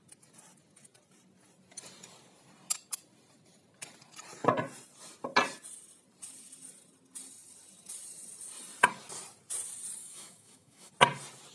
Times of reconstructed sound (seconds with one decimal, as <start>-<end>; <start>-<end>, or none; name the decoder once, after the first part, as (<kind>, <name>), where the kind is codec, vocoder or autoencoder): 10.0-10.9 (autoencoder, DAC-VAE)